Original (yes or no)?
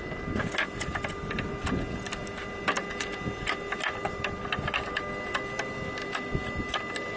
yes